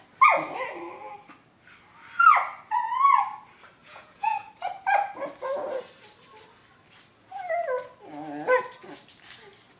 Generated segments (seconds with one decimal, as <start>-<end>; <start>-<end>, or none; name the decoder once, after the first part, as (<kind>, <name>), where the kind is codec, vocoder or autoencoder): 3.8-4.5 (vocoder, Vocos)